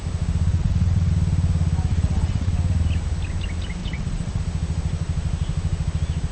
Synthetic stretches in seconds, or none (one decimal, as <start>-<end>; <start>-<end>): 0.5-1.1; 1.9-2.5; 3.8-4.4